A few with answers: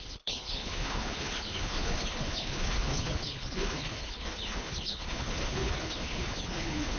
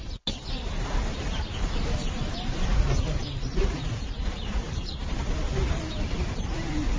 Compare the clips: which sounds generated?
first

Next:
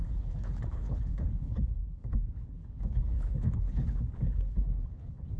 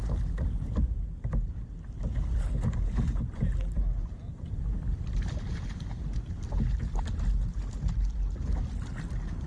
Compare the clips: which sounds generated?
first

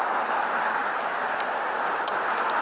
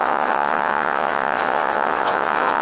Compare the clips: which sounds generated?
second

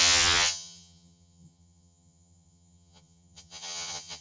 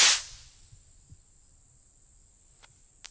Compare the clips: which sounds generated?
first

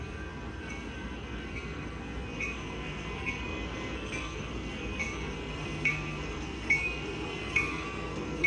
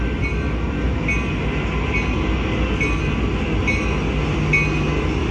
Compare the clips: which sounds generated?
first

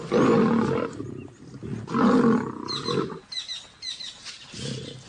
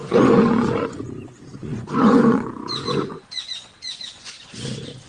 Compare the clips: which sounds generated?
second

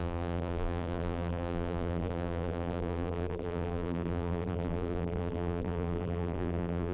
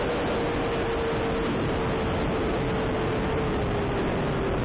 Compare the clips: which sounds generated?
first